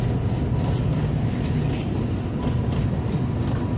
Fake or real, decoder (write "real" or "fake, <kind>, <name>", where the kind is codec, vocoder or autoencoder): real